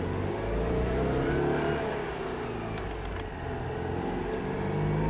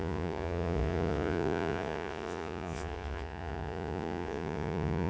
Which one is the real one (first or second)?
first